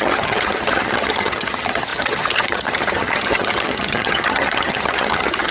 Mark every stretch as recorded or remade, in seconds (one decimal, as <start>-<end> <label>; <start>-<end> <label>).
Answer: 0.0-5.5 remade